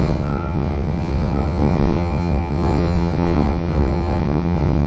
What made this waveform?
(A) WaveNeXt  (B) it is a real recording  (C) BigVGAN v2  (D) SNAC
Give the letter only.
A